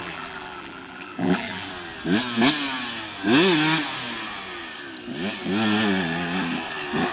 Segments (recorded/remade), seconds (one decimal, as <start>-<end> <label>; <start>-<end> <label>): 0.0-1.7 remade; 1.7-7.1 recorded